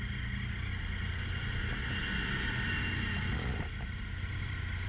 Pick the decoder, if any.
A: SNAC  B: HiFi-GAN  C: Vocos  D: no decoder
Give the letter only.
D